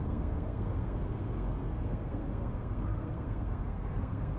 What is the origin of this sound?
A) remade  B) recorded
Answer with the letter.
A